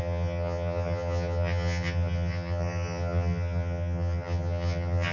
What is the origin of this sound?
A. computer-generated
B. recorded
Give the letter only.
A